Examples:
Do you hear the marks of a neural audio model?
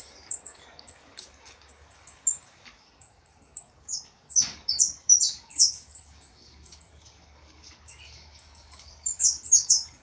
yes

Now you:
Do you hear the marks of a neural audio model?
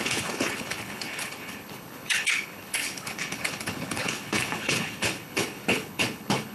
yes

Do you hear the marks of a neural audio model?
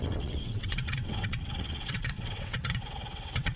yes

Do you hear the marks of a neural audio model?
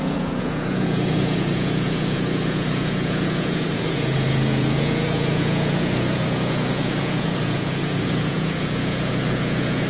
yes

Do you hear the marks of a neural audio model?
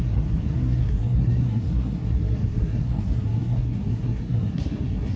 yes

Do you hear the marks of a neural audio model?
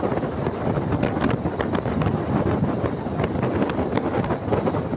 no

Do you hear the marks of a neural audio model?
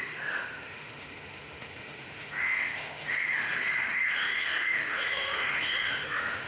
yes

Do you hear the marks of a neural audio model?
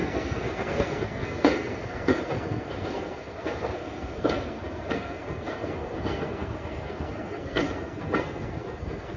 yes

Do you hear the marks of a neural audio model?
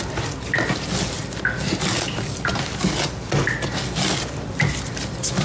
no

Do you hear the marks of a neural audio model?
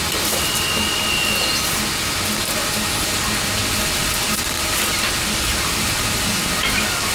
no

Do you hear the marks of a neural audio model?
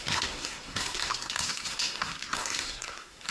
yes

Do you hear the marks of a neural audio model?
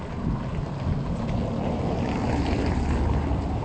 no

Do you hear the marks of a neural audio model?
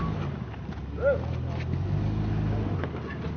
no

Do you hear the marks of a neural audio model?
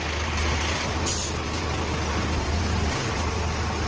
no